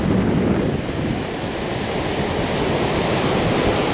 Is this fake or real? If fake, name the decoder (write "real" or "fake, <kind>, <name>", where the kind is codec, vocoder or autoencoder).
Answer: real